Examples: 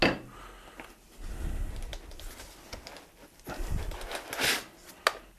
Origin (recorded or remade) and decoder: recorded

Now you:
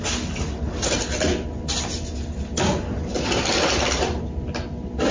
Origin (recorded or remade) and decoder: recorded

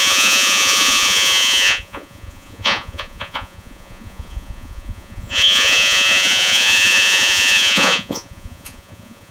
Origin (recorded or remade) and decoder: remade, vocoder, Vocos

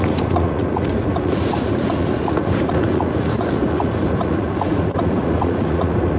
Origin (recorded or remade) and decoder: remade, vocoder, Vocos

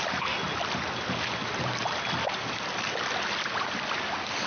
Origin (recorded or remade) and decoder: recorded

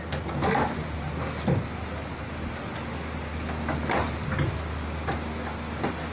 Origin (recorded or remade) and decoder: recorded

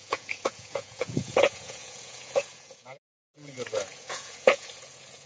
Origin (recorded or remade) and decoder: remade, vocoder, Vocos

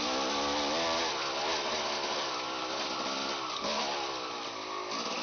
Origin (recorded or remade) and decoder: recorded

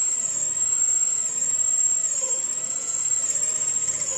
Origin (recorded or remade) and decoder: remade, vocoder, Vocos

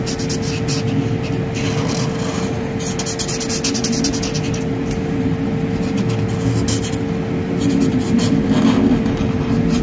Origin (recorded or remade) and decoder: recorded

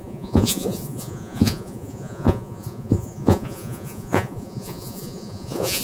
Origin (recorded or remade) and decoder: remade, vocoder, Vocos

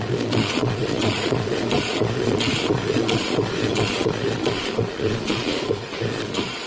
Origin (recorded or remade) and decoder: remade, vocoder, Vocos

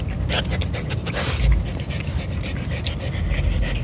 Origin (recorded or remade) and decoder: recorded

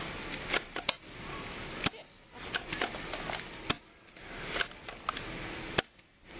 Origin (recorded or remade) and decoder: recorded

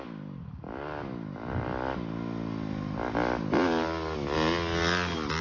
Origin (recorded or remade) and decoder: recorded